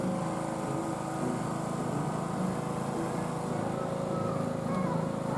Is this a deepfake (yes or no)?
no